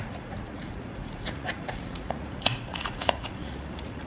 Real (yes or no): no